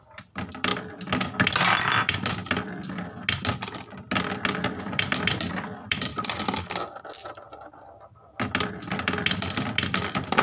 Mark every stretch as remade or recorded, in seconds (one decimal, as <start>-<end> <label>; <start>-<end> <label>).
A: 0.0-0.7 remade; 0.7-1.8 recorded; 1.8-2.4 remade; 2.4-5.5 recorded; 5.5-6.1 remade; 6.1-8.7 recorded; 8.7-9.2 remade; 9.2-10.4 recorded